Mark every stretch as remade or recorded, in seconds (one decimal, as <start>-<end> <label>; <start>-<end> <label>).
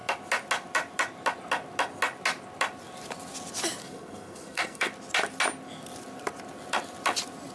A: 0.0-3.8 recorded; 3.8-4.9 remade; 4.9-7.5 recorded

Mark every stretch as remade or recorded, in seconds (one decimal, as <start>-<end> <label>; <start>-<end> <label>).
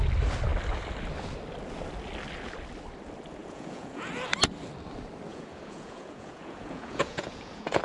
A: 0.0-3.4 recorded; 3.4-4.1 remade; 4.1-5.3 recorded; 5.3-7.8 remade